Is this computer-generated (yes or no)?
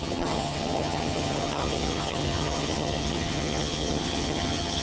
yes